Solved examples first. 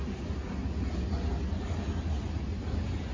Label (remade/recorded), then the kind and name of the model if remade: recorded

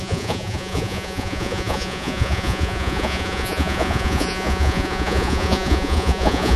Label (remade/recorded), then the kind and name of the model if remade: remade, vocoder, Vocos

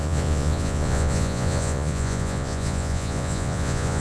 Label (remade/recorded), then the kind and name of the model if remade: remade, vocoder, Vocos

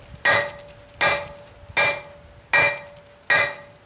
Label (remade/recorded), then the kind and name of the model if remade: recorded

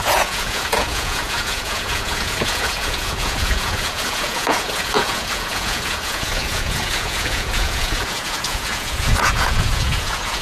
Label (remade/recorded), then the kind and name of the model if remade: remade, vocoder, Vocos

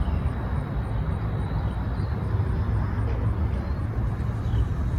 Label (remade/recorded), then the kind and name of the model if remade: recorded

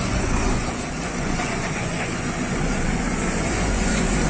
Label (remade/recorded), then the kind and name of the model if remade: remade, vocoder, Vocos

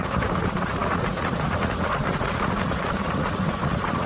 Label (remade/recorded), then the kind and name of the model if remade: remade, vocoder, Vocos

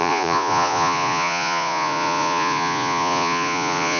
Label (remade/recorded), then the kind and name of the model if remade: remade, vocoder, Vocos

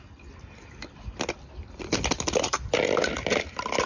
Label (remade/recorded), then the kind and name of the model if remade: recorded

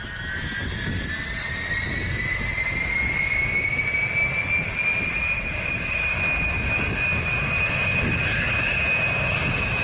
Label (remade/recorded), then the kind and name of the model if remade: recorded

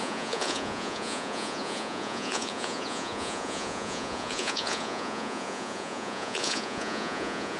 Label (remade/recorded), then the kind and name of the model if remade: remade, vocoder, Vocos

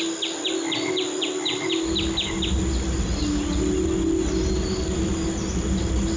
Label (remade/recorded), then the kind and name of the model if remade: recorded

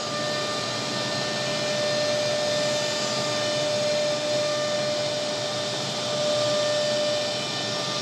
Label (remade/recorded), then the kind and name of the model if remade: recorded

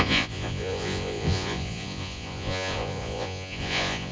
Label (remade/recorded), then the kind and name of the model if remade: remade, vocoder, Vocos